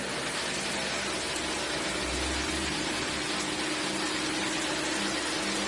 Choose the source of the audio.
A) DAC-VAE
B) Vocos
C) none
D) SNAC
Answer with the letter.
C